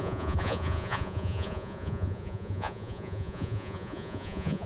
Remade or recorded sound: remade